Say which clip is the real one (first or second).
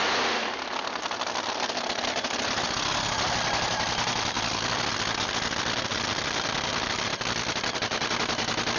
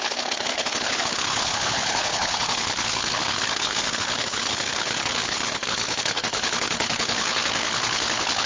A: first